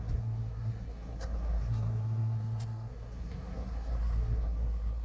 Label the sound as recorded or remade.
remade